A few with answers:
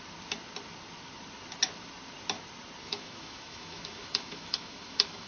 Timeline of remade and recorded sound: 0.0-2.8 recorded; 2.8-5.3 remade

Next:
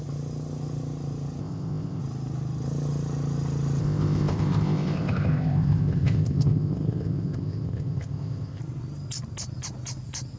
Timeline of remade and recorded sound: 0.0-1.4 recorded; 1.4-2.0 remade; 2.0-3.8 recorded; 3.8-8.6 remade; 8.6-10.4 recorded